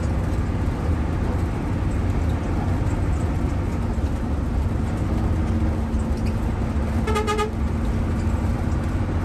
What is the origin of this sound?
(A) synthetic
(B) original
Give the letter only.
B